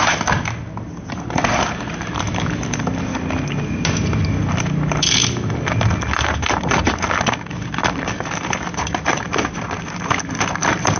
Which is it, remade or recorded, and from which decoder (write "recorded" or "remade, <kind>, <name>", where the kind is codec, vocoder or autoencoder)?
recorded